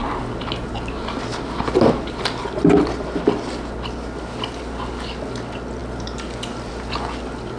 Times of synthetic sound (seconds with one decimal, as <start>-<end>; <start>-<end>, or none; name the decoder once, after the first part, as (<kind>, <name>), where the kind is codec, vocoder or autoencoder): none